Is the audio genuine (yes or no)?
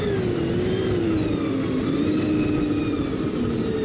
yes